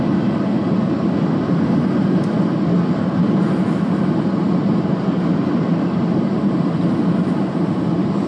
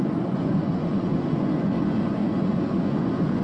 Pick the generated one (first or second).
second